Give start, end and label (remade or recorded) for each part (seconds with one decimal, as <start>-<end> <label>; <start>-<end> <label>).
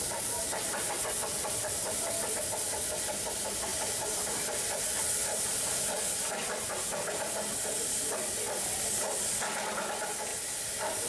0.0-5.2 recorded; 5.2-6.7 remade; 6.7-10.3 recorded; 10.3-11.1 remade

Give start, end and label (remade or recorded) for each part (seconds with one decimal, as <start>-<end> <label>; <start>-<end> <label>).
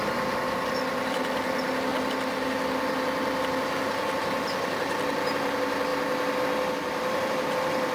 0.0-7.9 recorded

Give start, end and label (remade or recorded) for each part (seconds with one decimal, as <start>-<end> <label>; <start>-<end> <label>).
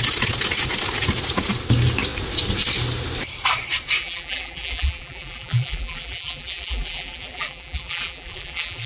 0.0-4.0 recorded; 4.0-8.9 remade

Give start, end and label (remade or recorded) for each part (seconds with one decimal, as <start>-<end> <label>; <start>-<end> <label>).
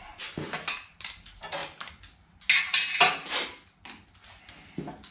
0.0-5.1 recorded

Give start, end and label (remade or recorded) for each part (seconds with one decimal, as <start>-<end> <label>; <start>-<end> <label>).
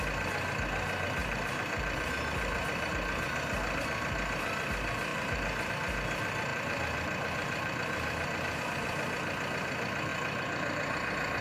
0.0-1.2 recorded; 1.2-2.9 remade; 2.9-5.1 recorded; 5.1-5.7 remade; 5.7-6.5 recorded; 6.5-8.6 remade; 8.6-11.4 recorded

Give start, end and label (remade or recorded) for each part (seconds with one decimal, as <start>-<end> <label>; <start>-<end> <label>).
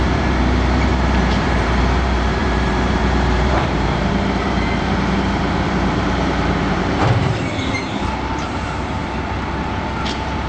0.0-9.0 remade; 9.0-9.8 recorded; 9.8-10.5 remade